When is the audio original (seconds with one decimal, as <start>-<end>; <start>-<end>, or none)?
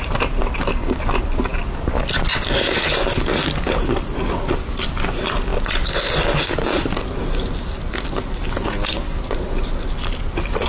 0.0-10.7